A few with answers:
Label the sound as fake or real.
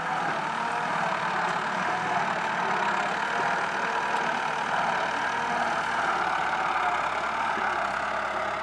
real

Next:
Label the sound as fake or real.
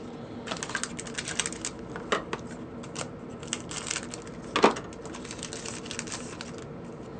real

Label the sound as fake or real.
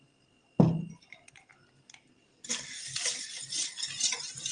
real